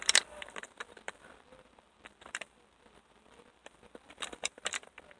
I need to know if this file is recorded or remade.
remade